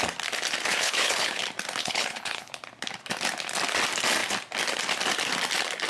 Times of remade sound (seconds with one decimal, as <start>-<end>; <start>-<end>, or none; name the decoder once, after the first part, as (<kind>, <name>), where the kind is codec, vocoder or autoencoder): 0.7-1.4 (codec, HILCodec); 1.8-2.5